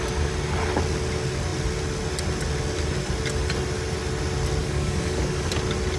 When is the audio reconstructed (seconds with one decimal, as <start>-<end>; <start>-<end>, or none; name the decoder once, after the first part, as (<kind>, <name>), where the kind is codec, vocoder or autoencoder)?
4.6-5.5 (codec, DAC)